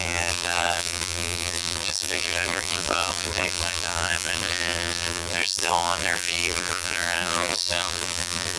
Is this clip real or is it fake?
fake